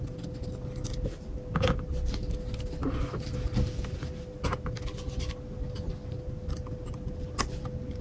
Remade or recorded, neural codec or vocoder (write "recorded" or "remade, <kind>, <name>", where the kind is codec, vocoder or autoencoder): recorded